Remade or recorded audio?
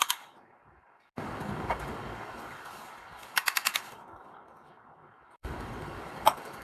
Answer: remade